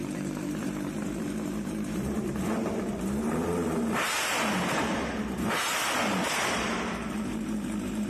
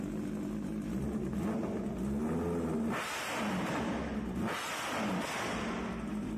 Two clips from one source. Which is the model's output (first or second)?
first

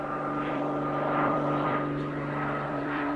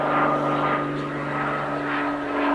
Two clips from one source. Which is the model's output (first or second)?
first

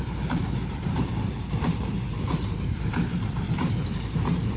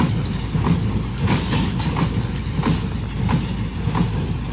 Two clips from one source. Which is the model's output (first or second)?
first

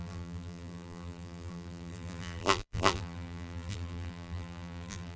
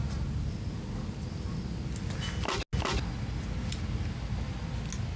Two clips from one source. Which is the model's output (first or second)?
first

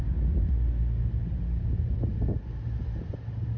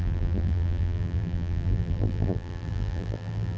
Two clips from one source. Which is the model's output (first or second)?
second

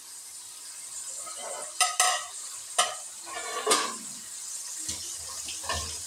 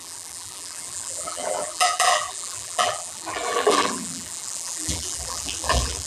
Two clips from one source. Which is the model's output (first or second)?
second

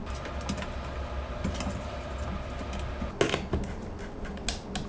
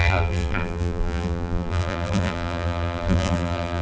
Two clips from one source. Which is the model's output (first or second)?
second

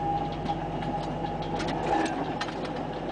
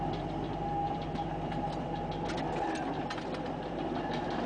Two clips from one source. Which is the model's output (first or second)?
second